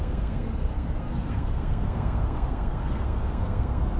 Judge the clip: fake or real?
fake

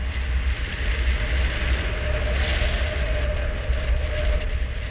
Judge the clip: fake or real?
real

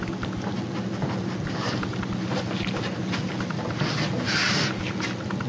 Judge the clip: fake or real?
real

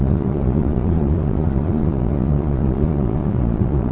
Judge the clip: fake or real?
fake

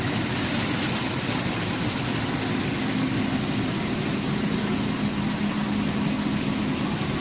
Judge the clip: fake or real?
real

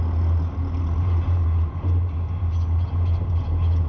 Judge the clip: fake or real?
real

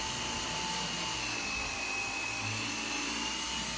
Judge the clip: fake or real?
real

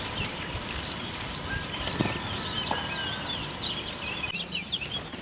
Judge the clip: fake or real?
real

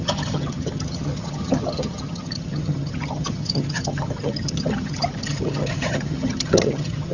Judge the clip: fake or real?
fake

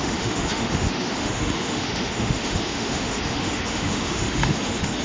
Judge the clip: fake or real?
fake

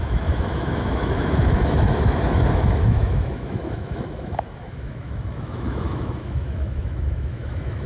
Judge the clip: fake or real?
fake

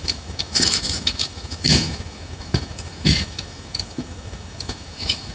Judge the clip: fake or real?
fake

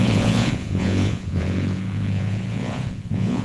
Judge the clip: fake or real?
fake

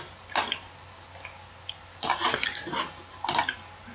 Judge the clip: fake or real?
real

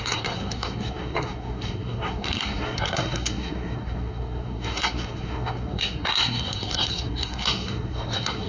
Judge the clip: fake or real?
fake